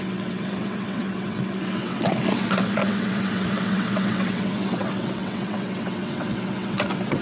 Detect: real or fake fake